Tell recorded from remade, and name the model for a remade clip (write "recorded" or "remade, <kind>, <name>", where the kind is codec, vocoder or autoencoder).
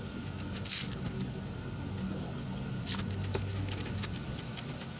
recorded